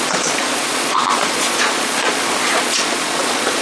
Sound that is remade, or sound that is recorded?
remade